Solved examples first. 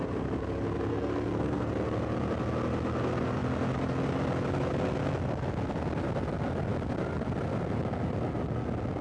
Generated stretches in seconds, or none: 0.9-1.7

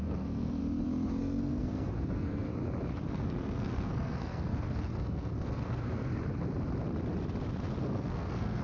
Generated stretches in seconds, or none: 0.0-0.6; 1.2-2.5; 3.1-6.1; 7.8-8.6

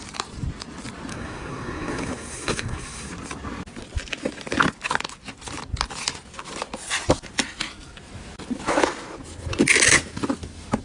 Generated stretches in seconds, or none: 1.1-3.1

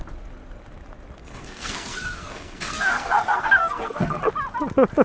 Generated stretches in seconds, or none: 1.2-4.2

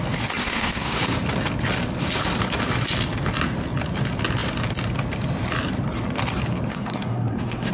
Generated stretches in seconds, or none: 0.4-1.0; 6.7-7.7

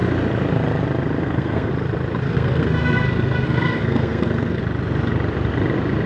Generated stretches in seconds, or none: 1.2-1.7; 2.2-4.6

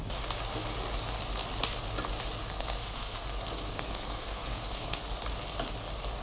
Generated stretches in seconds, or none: 2.4-5.0